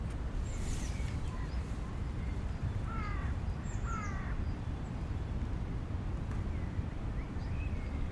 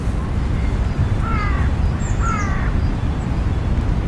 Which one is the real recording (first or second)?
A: second